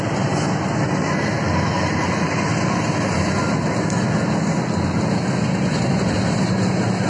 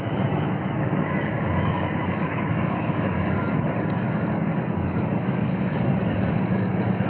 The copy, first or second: second